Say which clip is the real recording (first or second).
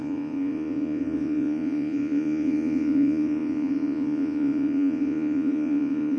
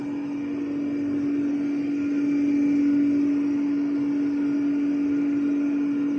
second